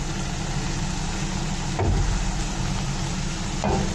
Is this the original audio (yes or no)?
yes